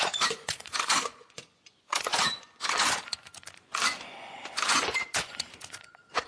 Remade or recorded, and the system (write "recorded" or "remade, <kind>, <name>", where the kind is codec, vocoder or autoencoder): remade, vocoder, Vocos